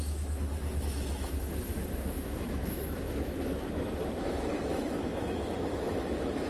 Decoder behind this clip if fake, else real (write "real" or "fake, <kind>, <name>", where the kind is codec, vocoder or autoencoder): fake, autoencoder, DAC-VAE